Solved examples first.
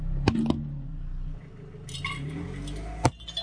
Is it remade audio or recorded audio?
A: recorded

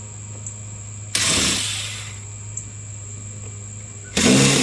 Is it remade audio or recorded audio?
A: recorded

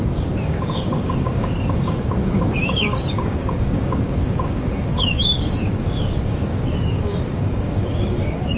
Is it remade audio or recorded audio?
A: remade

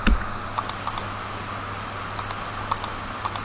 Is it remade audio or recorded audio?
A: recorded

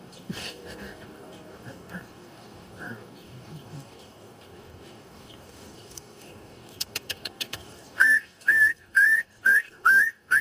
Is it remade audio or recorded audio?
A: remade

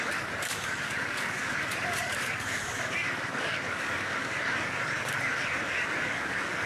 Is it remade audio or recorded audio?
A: remade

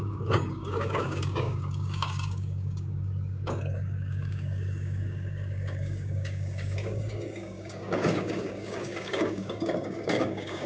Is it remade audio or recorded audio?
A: remade